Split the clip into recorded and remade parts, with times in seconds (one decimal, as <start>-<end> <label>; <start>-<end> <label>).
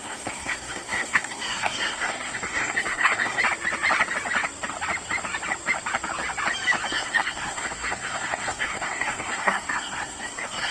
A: 0.0-3.4 remade; 3.4-6.9 recorded; 6.9-10.7 remade